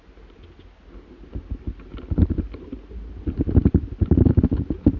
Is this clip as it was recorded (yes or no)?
yes